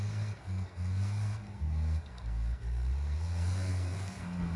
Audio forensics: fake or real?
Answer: fake